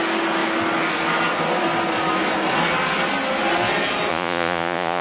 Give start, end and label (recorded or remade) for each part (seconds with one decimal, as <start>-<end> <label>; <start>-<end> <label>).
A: 0.0-4.1 recorded; 4.1-5.0 remade